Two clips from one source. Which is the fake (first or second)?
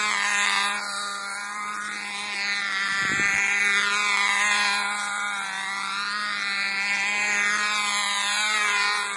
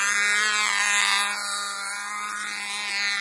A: first